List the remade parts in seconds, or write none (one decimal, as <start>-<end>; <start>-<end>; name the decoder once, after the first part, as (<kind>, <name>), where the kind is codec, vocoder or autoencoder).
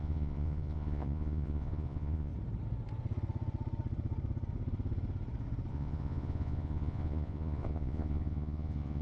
0.0-2.3 (vocoder, Vocos); 5.7-9.0